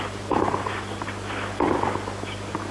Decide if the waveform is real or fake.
real